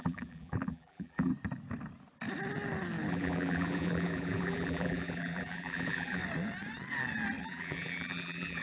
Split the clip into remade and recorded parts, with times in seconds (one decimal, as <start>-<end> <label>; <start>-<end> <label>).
0.0-1.3 remade; 1.3-3.1 recorded; 3.1-6.2 remade; 6.2-7.4 recorded; 7.4-8.6 remade